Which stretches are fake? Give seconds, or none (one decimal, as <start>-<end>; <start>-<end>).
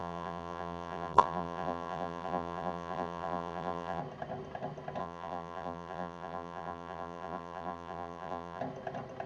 0.0-4.0; 5.0-8.6